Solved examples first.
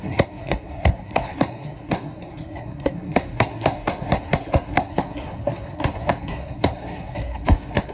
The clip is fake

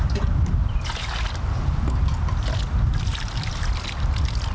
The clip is real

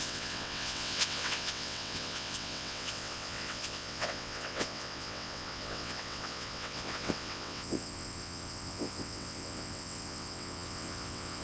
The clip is fake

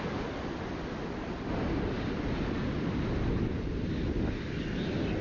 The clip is real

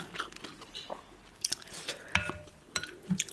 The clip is real